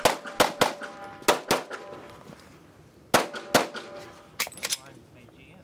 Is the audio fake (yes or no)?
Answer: no